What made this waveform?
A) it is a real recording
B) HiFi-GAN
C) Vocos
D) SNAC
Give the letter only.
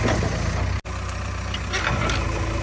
A